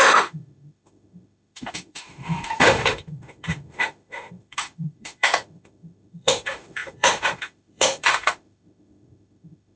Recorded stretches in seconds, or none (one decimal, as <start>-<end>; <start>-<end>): none